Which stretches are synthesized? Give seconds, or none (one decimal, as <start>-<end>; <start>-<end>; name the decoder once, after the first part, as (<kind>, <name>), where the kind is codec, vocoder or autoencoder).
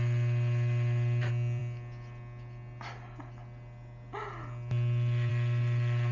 none